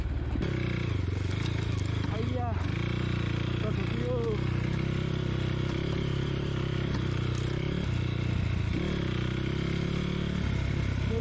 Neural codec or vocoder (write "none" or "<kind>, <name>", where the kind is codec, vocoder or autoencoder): none